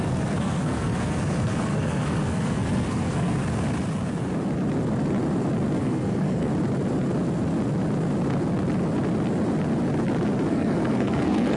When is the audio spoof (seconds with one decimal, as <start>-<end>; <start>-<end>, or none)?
0.0-3.4; 5.8-6.5; 10.5-11.6